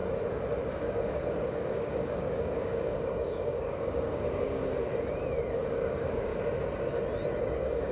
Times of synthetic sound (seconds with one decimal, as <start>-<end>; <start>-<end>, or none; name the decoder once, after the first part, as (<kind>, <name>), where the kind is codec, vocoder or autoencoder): 0.7-4.7 (codec, DAC); 5.5-6.3; 7.5-7.9